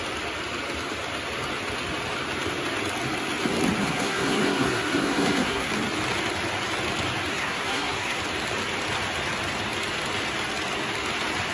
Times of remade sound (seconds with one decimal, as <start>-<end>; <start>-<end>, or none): 3.8-5.7; 7.3-8.2